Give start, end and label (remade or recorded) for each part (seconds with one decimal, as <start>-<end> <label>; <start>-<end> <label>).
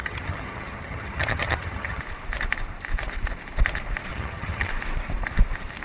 0.0-2.0 remade; 2.0-4.1 recorded; 4.1-4.7 remade; 4.7-5.8 recorded